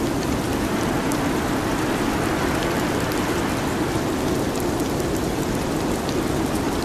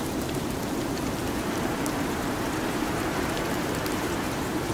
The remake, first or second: second